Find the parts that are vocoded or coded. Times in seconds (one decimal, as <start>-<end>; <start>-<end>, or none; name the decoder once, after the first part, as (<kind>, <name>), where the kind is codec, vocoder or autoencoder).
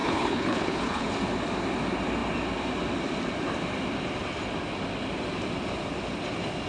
0.0-1.1 (codec, HILCodec)